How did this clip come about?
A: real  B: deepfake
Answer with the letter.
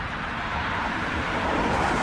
B